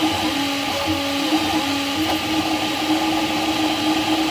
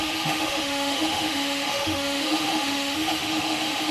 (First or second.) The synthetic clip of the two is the second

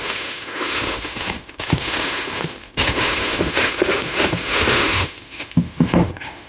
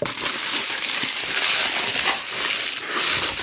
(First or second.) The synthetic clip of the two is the first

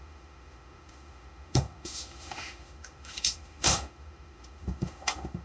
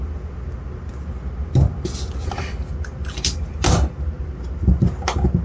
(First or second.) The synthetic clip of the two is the first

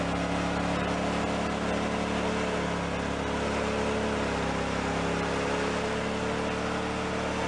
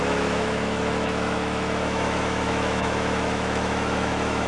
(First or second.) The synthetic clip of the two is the second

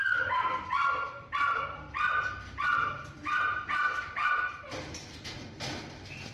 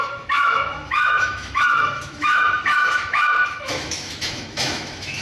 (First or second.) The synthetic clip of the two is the second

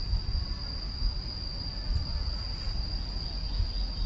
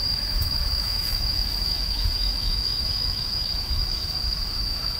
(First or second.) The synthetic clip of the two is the second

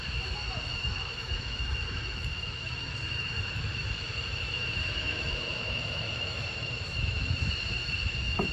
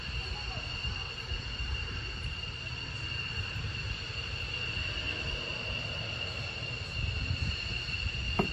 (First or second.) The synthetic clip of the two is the first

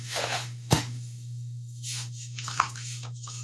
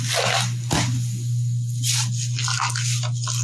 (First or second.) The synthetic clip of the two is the first